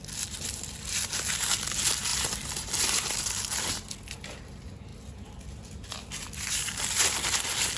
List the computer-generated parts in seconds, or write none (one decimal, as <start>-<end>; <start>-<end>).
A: none